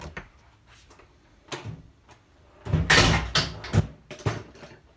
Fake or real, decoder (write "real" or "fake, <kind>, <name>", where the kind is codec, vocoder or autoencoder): real